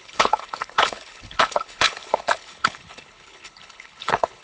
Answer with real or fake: fake